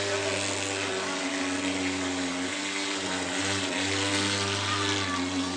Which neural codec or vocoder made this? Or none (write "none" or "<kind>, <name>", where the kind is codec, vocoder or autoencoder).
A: none